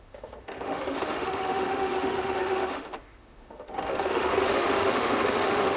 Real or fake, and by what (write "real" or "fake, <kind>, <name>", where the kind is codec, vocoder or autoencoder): fake, autoencoder, DAC-VAE